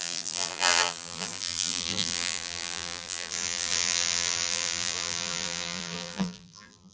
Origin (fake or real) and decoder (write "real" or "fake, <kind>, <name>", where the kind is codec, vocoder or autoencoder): fake, vocoder, BigVGAN v2